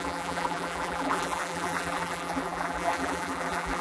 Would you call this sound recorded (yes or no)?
no